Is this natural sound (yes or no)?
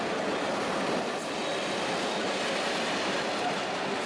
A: yes